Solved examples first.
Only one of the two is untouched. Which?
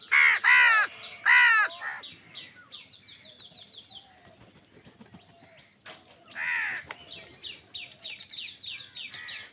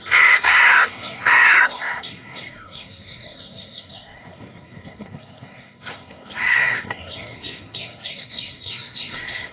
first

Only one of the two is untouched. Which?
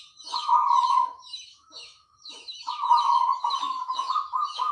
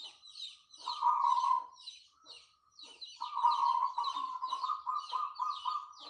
second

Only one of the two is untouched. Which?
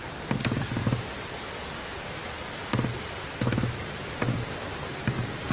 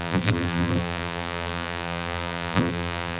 first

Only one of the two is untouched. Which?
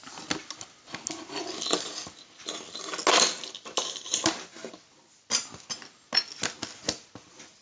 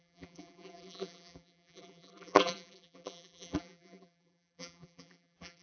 first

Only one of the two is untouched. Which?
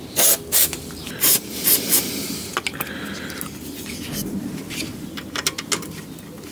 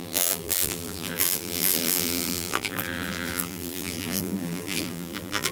first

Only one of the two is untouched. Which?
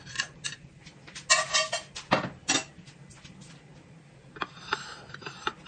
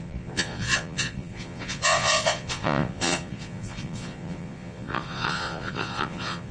first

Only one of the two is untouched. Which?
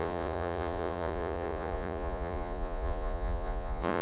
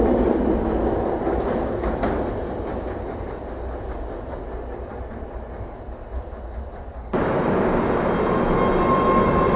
second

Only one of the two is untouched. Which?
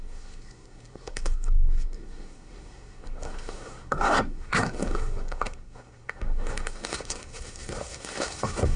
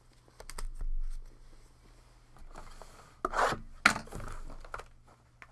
second